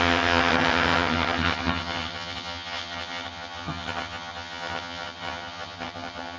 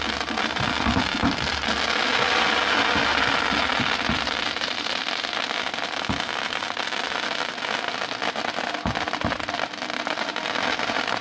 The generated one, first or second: first